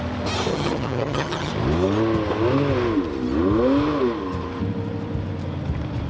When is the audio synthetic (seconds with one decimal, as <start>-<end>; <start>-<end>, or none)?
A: 0.5-1.5